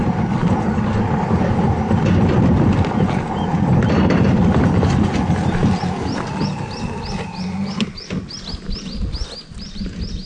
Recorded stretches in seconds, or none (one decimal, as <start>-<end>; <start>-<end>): 0.0-10.3